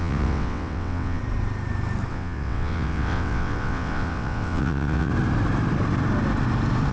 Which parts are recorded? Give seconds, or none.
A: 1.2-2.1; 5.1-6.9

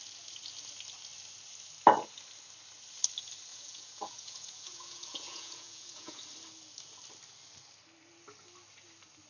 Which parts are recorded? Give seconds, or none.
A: 0.0-3.5; 6.2-9.3

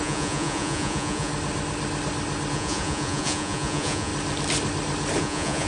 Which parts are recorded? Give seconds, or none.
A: 1.3-2.5; 4.1-5.2

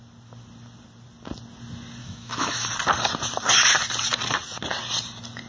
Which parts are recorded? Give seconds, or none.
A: 0.0-2.0; 2.7-5.5